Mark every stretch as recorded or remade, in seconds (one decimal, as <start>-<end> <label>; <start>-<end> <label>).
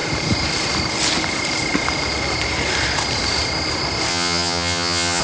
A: 0.0-4.1 recorded; 4.1-5.2 remade